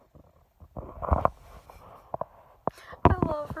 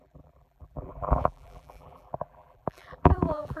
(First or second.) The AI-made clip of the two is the second